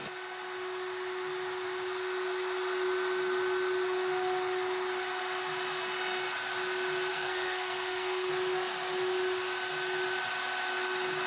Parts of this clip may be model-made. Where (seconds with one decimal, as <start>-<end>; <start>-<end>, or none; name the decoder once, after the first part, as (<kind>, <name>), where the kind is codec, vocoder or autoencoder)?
7.1-8.3 (codec, SNAC)